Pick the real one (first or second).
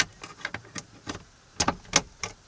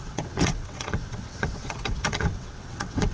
first